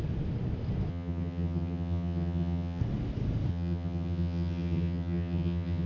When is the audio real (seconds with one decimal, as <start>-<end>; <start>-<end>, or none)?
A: 0.0-0.9; 2.8-3.5